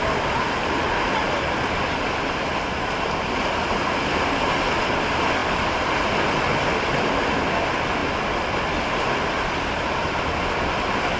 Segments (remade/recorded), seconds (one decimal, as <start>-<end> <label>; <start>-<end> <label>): 0.0-11.2 recorded